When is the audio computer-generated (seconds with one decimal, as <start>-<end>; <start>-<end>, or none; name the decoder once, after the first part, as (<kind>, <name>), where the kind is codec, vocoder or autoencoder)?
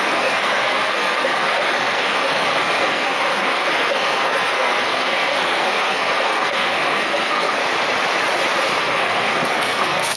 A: 0.0-7.6 (codec, SNAC); 8.8-10.2